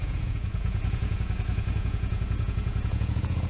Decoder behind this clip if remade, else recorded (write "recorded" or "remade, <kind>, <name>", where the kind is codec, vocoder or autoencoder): remade, vocoder, Vocos